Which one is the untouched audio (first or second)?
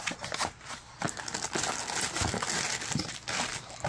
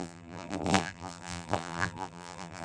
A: first